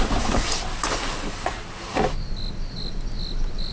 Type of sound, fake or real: real